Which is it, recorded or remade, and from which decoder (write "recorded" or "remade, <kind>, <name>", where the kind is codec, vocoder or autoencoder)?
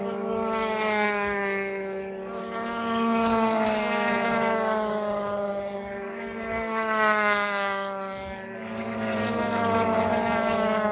remade, codec, DAC